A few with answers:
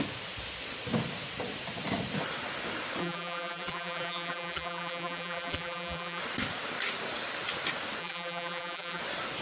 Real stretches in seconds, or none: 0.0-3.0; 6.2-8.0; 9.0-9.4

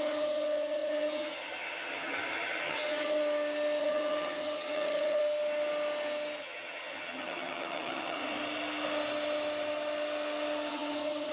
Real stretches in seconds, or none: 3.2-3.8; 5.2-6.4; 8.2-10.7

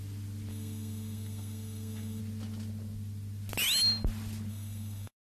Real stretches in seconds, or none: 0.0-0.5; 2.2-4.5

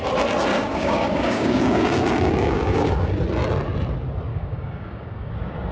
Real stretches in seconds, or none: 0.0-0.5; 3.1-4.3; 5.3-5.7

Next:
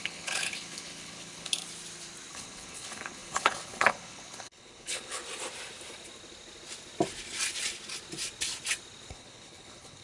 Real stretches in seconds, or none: 1.6-2.3; 5.2-9.1

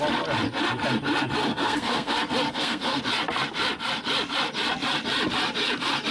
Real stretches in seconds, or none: 0.0-1.5; 2.1-2.5; 3.0-6.1

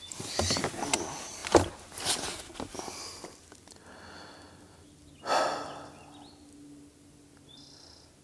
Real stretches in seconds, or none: 0.0-8.2